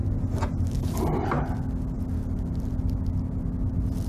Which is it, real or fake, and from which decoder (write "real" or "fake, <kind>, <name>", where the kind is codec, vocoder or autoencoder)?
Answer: real